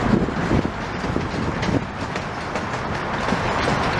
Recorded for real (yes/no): yes